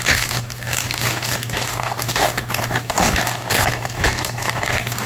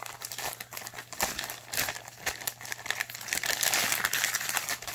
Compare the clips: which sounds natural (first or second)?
second